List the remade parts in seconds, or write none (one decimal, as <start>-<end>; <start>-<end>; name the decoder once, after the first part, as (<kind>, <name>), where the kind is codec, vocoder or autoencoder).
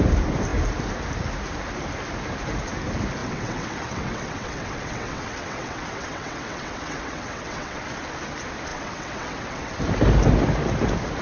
3.2-7.8 (vocoder, WaveNeXt); 8.7-9.8